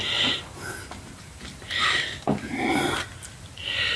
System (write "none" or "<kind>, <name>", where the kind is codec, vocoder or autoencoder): none